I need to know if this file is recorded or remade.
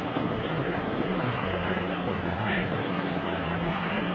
remade